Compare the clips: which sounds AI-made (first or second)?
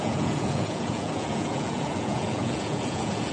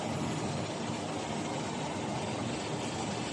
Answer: first